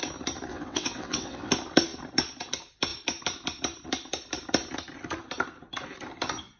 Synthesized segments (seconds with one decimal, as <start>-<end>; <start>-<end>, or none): 0.5-1.5

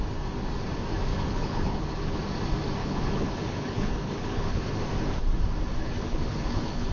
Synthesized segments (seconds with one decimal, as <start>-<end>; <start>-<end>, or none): 1.1-2.2; 2.8-4.7; 5.8-6.9

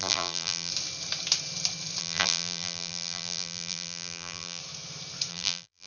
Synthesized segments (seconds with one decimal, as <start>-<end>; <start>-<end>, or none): 0.0-0.7; 2.0-4.6; 5.3-5.9